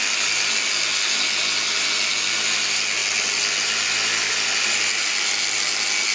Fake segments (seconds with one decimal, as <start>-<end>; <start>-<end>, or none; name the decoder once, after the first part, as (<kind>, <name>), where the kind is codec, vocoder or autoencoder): none